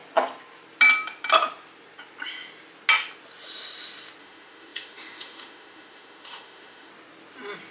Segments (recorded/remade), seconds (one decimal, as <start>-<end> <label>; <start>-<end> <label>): 0.0-4.2 recorded; 4.2-6.9 remade; 6.9-7.7 recorded